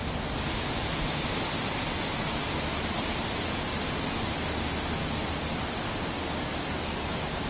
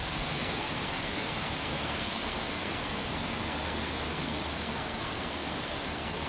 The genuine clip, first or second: first